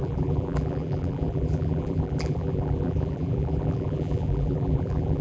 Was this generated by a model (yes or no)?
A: yes